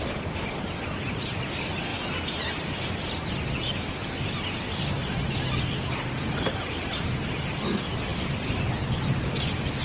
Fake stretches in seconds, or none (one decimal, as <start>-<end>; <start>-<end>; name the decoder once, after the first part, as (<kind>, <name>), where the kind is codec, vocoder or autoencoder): none